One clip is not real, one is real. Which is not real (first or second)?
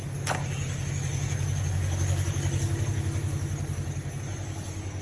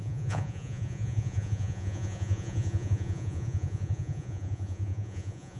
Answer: second